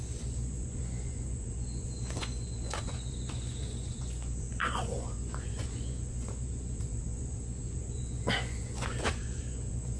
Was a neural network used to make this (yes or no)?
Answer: yes